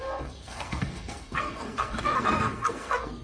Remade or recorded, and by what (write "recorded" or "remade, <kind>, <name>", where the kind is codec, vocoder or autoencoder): remade, codec, SNAC